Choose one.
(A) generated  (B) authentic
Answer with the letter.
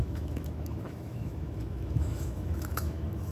A